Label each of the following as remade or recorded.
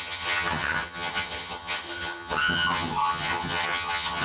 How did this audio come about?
remade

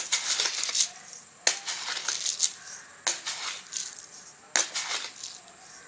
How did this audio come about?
recorded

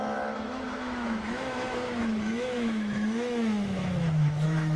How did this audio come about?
remade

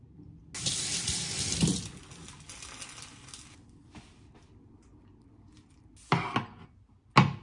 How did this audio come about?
recorded